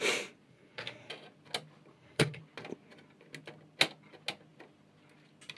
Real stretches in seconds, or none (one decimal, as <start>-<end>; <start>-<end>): 0.0-0.5; 1.1-1.9; 2.4-5.6